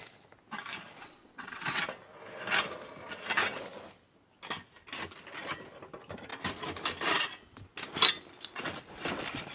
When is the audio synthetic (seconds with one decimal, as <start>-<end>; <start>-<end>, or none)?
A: 1.0-1.8